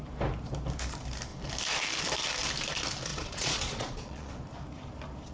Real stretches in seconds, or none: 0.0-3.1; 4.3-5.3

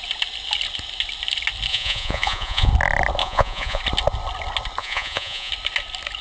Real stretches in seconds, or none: 0.0-1.7; 2.7-3.2; 3.8-4.8; 5.5-6.2

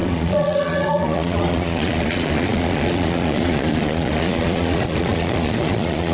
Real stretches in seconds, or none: none

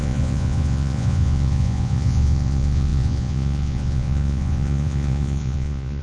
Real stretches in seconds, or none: none

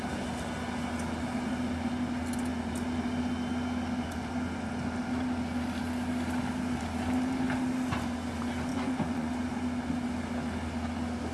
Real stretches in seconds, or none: 0.0-8.7; 9.3-11.3

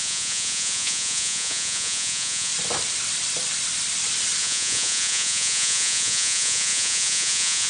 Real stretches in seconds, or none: 2.5-4.4

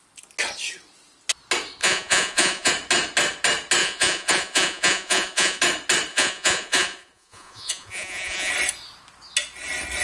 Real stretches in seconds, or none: 0.0-1.8; 2.7-3.8; 5.6-6.1; 8.5-10.0

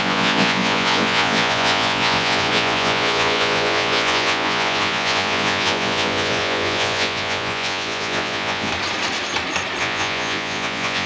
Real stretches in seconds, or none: 8.7-9.8